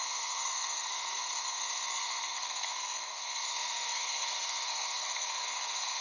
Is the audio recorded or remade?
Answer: remade